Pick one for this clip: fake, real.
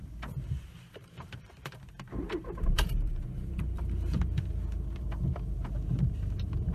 fake